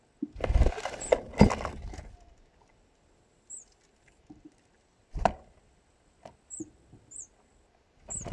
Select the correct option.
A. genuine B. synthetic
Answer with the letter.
A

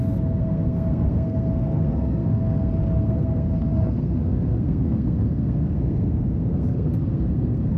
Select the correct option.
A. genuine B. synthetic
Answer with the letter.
B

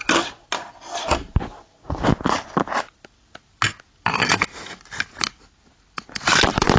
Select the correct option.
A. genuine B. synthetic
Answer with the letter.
A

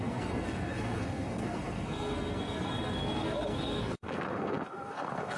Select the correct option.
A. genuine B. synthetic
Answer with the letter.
B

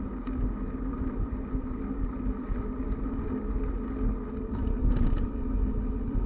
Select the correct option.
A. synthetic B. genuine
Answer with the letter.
B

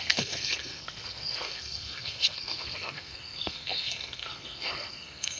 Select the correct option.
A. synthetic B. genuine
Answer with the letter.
A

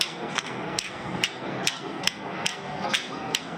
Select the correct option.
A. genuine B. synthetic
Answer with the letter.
B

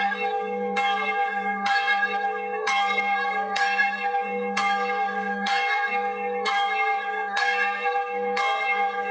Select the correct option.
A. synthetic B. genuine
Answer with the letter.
A